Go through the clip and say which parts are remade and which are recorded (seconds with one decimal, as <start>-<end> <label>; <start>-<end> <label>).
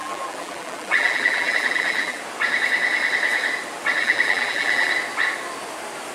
0.0-2.2 remade; 2.2-4.0 recorded; 4.0-4.9 remade; 4.9-6.1 recorded